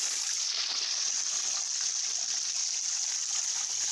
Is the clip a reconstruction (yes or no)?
no